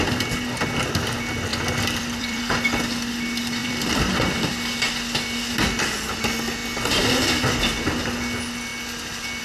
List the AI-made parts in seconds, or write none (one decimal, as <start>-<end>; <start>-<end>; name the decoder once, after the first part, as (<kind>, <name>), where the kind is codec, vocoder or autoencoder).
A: 1.5-2.4 (vocoder, BigVGAN v2); 3.6-4.5